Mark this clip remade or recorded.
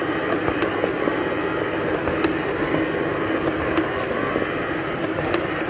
recorded